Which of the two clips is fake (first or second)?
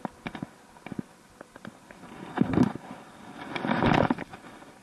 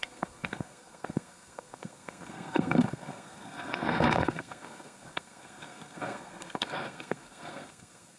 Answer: second